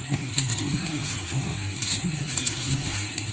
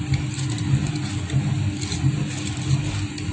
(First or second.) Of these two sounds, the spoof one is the first